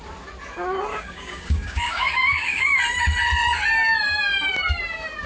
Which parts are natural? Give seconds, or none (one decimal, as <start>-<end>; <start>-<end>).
0.0-0.9; 2.8-5.3

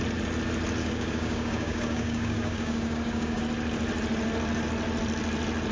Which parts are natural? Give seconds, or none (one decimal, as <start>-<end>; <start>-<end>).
0.0-0.8; 3.4-5.7

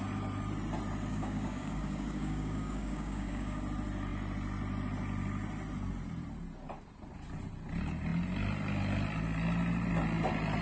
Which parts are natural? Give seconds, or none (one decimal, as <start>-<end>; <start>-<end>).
0.0-1.1; 3.6-10.6

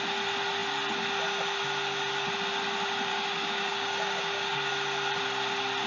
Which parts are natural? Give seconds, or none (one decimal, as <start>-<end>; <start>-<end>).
0.0-3.1; 4.7-5.9